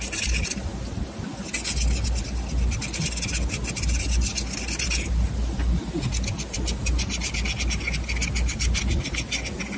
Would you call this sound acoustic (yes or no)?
yes